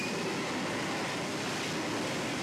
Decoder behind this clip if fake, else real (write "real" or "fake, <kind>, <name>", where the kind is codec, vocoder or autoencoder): real